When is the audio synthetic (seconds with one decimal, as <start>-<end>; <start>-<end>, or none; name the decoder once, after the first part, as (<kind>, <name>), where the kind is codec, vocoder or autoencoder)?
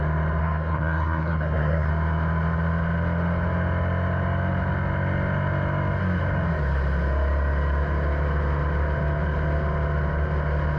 0.4-1.9 (codec, SNAC)